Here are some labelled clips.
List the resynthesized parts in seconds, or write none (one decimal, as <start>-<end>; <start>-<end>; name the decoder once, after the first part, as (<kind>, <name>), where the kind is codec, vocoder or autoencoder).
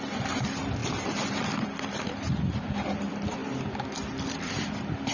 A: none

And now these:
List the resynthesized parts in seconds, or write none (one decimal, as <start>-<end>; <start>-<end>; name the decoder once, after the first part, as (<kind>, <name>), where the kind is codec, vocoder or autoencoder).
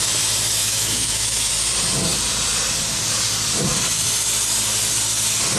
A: 0.6-1.5 (autoencoder, DAC-VAE)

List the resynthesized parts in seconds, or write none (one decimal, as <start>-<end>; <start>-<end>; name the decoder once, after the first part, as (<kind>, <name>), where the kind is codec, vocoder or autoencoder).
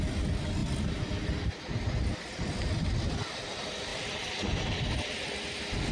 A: 0.6-1.6 (vocoder, BigVGAN v2); 3.9-5.1